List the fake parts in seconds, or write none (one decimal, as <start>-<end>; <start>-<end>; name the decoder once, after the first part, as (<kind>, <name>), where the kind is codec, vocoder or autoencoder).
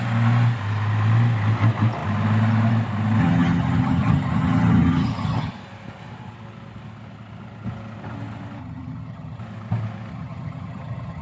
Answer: 3.2-5.5 (vocoder, HiFi-GAN); 8.6-9.4; 10.1-11.2